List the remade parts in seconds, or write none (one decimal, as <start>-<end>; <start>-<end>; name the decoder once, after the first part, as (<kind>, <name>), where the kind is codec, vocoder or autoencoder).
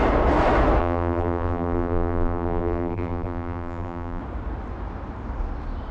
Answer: 0.8-4.2 (vocoder, BigVGAN v2)